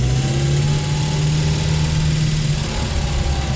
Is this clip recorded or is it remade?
recorded